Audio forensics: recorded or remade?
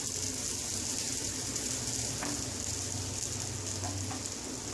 recorded